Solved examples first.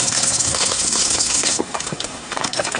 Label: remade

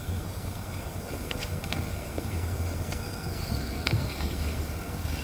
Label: remade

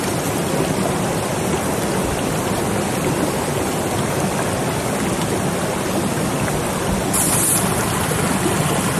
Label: recorded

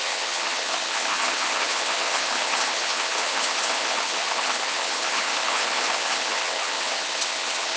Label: remade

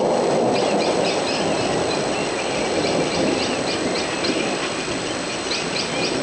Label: recorded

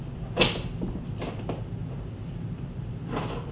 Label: recorded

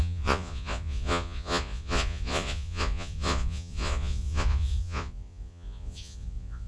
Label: remade